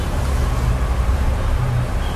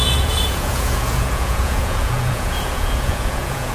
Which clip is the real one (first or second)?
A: first